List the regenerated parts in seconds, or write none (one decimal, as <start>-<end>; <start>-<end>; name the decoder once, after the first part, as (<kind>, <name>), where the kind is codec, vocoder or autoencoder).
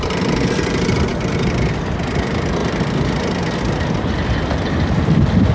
0.0-1.1 (vocoder, BigVGAN v2); 1.8-2.6